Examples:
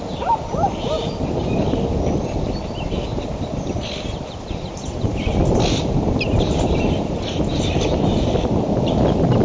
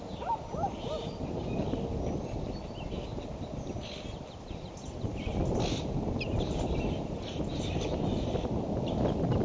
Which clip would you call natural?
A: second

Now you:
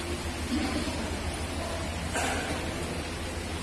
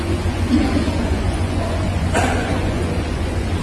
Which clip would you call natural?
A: first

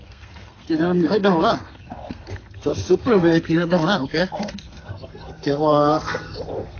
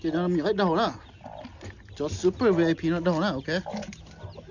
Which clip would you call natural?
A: second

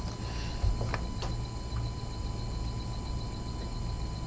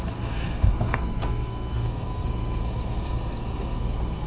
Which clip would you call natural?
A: first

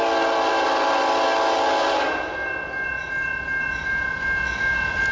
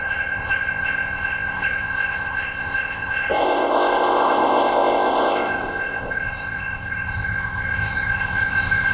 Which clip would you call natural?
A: first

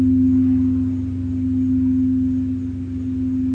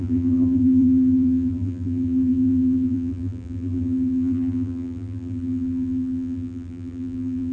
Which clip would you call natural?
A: first